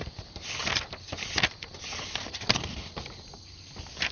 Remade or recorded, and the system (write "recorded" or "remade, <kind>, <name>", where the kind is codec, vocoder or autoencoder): recorded